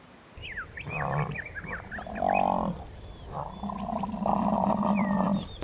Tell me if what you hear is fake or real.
fake